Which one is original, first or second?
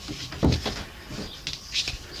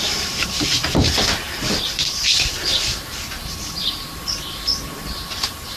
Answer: first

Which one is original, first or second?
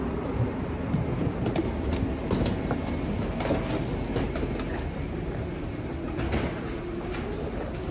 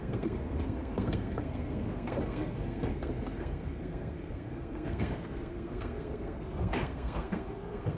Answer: first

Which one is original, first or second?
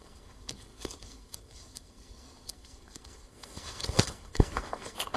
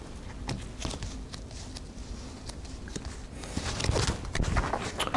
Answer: second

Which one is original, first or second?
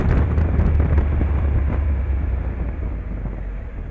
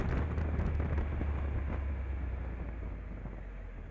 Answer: second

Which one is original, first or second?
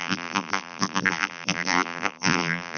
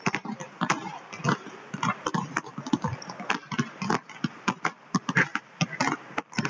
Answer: second